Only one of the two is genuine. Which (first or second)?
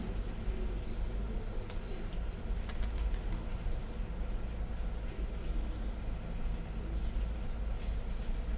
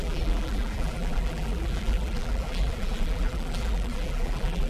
first